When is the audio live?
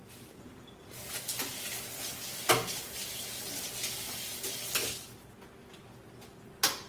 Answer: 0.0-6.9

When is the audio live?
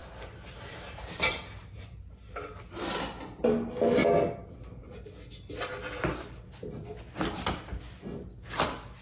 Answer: 2.2-9.0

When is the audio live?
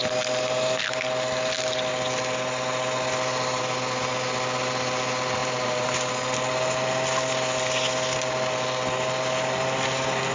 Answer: 0.0-5.4; 6.1-10.3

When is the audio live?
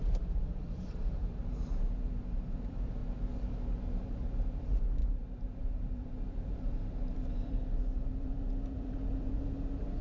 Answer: 3.0-4.0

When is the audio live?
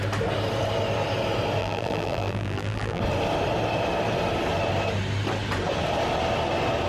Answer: 0.0-1.6; 3.0-6.9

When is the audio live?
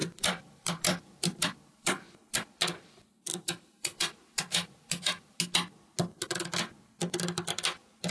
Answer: 2.1-3.3; 5.4-8.1